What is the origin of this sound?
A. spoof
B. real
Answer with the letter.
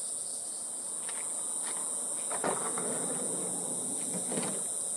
B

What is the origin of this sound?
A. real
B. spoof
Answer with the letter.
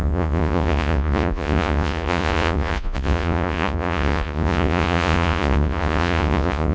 B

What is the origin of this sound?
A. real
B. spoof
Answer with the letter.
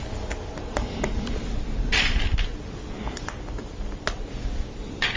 A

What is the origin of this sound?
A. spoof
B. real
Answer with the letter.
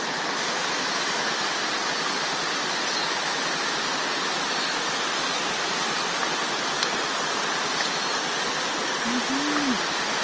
B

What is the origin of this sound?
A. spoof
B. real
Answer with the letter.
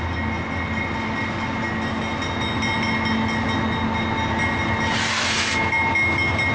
B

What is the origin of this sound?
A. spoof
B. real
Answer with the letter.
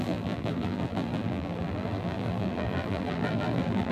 A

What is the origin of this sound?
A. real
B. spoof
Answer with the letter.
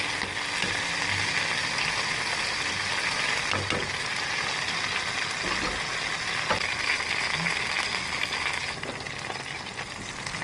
A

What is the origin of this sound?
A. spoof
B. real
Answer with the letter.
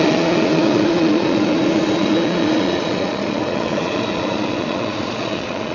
A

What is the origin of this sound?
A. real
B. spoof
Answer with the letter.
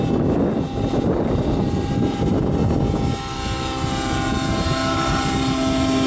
A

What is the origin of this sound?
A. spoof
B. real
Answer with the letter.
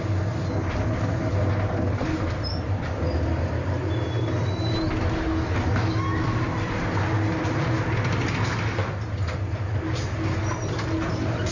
B